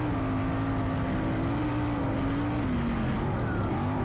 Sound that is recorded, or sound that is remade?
recorded